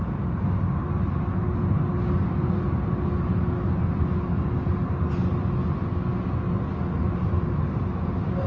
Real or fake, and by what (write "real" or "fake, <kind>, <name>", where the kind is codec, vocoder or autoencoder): real